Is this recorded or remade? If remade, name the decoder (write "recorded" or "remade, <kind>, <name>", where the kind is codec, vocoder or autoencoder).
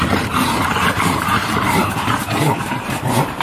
remade, vocoder, BigVGAN v2